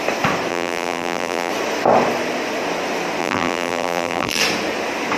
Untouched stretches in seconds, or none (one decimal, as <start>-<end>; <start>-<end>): 0.0-0.5; 1.5-3.2; 4.4-5.2